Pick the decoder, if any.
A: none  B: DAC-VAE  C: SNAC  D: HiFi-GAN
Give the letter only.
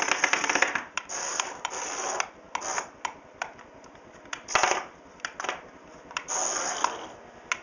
A